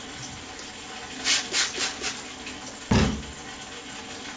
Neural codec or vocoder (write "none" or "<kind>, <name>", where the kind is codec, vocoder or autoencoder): none